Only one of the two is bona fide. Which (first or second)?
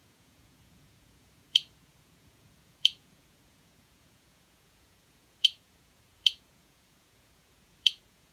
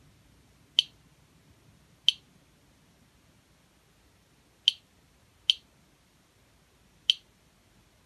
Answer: second